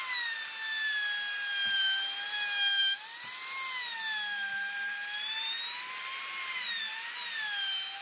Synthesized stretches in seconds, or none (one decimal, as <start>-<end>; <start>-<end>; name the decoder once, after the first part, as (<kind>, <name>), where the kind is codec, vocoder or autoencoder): 2.8-3.4 (vocoder, BigVGAN v2); 4.4-7.1